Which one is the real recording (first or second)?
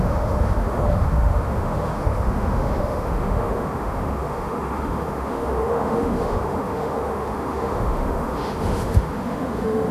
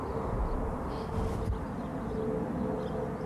second